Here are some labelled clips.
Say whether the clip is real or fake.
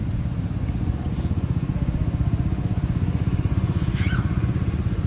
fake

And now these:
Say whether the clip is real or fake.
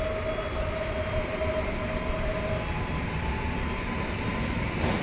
real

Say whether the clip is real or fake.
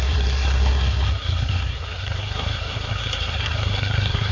fake